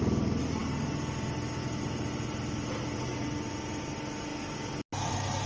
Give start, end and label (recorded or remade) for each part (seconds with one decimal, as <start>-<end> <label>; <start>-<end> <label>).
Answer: 0.0-5.5 recorded